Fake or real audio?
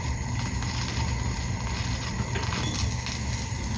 real